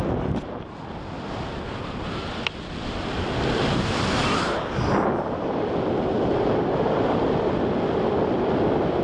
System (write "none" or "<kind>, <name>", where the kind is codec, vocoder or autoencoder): none